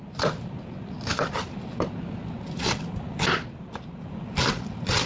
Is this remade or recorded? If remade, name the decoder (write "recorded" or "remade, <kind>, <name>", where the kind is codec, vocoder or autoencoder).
recorded